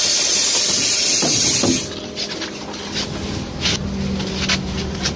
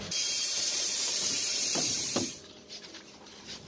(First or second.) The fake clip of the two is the second